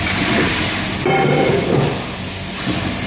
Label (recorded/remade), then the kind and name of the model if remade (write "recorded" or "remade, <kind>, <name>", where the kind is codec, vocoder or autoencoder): recorded